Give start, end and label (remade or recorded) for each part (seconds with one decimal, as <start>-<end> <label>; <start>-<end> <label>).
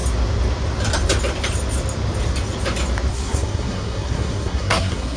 0.0-3.1 recorded; 3.1-5.2 remade